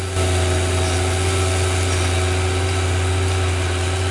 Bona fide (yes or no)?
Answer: yes